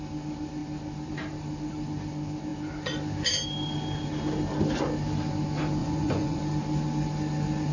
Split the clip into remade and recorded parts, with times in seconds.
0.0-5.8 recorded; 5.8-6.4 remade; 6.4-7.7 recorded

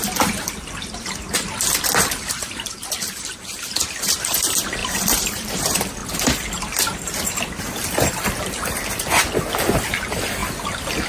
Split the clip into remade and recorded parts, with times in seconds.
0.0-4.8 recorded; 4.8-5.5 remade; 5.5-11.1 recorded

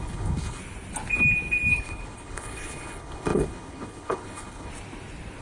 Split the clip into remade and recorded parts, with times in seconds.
0.0-0.6 remade; 0.6-1.7 recorded; 1.7-4.7 remade; 4.7-5.4 recorded